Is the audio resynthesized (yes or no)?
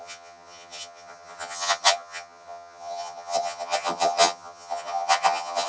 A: yes